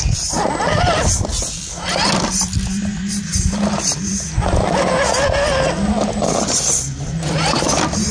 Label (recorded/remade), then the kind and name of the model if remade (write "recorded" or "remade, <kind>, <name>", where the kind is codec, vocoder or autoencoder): recorded